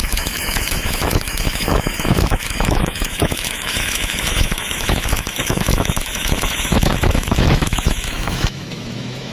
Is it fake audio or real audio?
fake